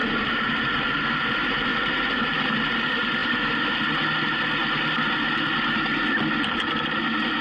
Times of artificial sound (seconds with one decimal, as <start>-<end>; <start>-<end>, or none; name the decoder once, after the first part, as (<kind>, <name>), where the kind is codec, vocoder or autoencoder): 1.7-2.5 (vocoder, BigVGAN v2)